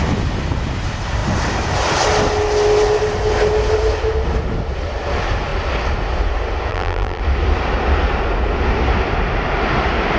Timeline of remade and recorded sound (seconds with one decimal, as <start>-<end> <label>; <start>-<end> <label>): 0.0-6.7 recorded; 6.7-7.2 remade; 7.2-10.2 recorded